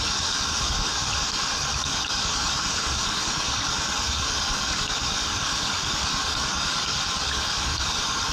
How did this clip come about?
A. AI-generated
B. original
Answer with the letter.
A